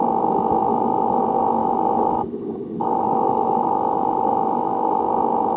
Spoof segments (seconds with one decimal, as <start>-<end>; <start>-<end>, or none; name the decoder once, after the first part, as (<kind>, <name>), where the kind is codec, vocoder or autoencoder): 0.7-1.2 (autoencoder, DAC-VAE); 1.6-5.0